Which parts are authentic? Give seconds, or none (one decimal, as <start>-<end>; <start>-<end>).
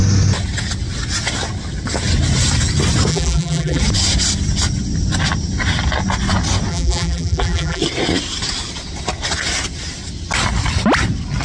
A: 0.0-3.1; 3.8-6.7; 7.8-11.4